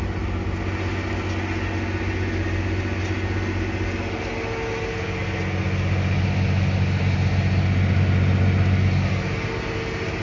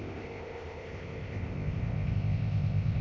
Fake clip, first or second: second